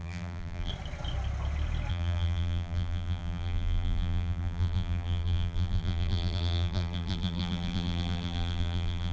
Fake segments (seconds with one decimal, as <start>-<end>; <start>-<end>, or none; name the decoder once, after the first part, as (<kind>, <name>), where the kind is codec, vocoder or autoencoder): 0.0-0.7 (vocoder, BigVGAN v2); 1.9-9.1